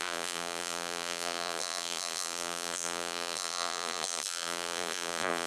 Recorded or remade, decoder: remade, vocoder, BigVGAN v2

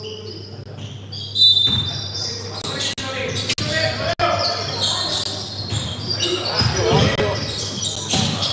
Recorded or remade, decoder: recorded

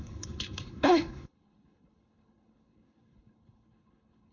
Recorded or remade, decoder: remade, codec, HILCodec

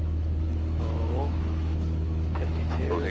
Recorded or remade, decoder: remade, autoencoder, DAC-VAE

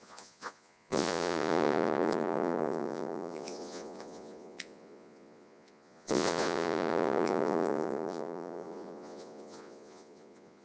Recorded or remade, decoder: remade, vocoder, Vocos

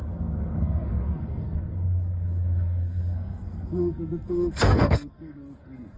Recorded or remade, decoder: remade, codec, SNAC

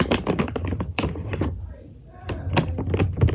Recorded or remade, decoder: recorded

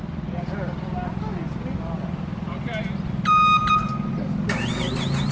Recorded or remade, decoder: recorded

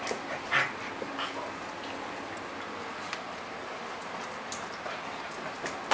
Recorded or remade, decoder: recorded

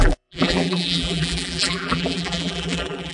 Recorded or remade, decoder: remade, vocoder, BigVGAN v2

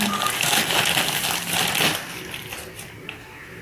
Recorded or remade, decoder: recorded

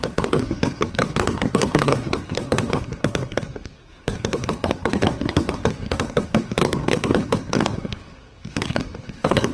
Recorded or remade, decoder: remade, codec, SNAC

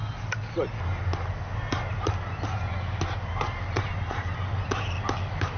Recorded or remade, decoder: recorded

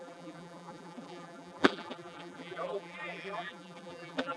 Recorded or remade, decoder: remade, vocoder, BigVGAN v2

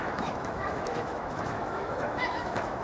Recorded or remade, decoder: remade, autoencoder, DAC-VAE